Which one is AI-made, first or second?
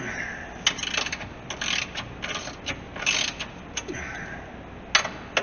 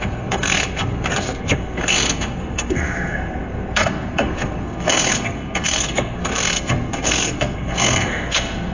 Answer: second